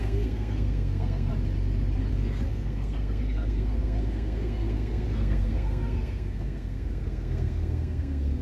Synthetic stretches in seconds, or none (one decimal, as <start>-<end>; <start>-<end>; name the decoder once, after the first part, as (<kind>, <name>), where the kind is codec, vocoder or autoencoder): 0.0-1.3 (codec, SNAC); 2.1-8.4